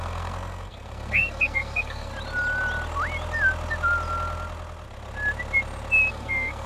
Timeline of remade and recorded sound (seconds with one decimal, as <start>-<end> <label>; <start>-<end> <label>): 0.0-2.1 remade; 2.1-6.1 recorded; 6.1-6.7 remade